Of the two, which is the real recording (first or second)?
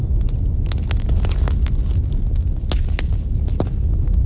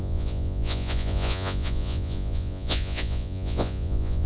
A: first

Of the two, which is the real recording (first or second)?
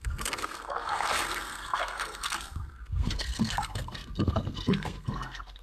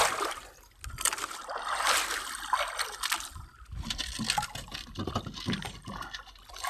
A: second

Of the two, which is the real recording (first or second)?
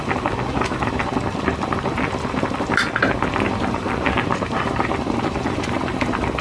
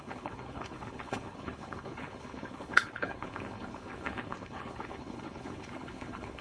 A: first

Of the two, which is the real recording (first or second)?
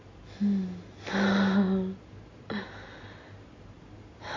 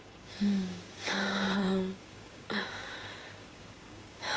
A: first